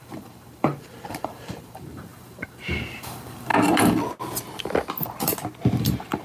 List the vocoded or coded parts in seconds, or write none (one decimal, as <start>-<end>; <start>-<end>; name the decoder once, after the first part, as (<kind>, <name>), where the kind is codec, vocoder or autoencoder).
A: 0.0-3.5 (vocoder, BigVGAN v2); 5.8-6.2